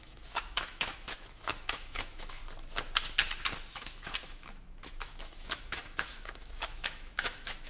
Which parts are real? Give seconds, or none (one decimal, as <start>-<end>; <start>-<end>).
2.4-3.7